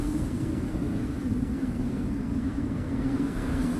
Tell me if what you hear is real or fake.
fake